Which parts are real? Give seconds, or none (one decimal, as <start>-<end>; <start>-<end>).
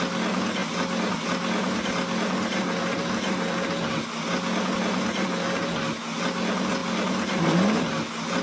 0.0-8.4